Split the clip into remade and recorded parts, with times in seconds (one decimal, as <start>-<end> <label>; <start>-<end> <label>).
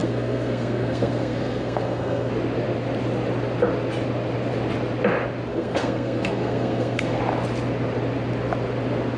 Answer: 0.0-2.3 remade; 2.3-5.5 recorded; 5.5-7.2 remade; 7.2-9.2 recorded